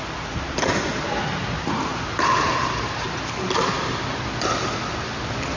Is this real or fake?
real